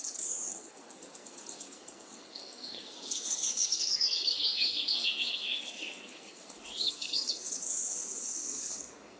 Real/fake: fake